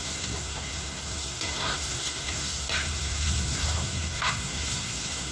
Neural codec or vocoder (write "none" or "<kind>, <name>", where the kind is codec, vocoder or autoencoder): codec, SNAC